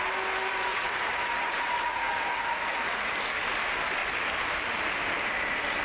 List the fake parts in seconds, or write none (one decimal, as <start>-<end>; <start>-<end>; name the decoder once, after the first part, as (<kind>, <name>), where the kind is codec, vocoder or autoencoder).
0.7-3.1 (vocoder, Vocos)